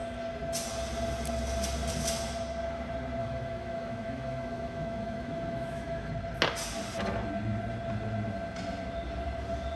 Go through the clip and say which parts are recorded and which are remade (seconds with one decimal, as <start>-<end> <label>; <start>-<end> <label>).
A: 0.0-3.2 recorded; 3.2-6.1 remade; 6.1-9.8 recorded